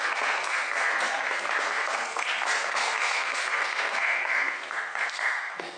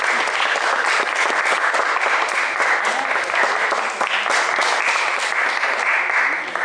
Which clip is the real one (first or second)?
second